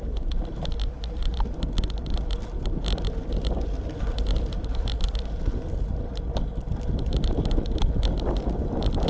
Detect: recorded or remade recorded